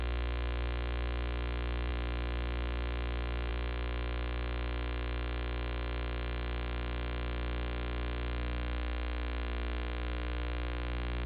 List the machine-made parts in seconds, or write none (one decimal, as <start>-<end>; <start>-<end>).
none